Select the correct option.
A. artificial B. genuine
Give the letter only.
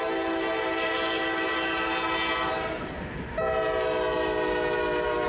B